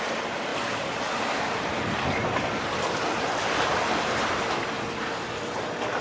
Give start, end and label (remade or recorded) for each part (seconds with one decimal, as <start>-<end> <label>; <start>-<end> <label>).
0.0-0.5 recorded; 0.5-1.8 remade; 1.8-6.0 recorded